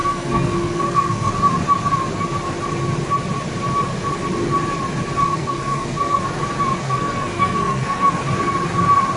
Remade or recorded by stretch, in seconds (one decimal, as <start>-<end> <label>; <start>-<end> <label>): 0.0-1.3 remade; 1.3-5.2 recorded; 5.2-6.2 remade; 6.2-6.8 recorded; 6.8-8.1 remade; 8.1-9.2 recorded